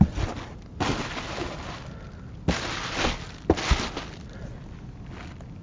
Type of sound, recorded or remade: recorded